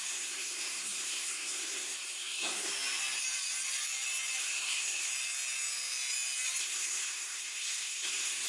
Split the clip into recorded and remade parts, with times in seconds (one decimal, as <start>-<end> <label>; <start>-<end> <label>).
0.0-2.7 remade; 2.7-4.4 recorded; 4.4-5.1 remade; 5.1-6.6 recorded; 6.6-8.5 remade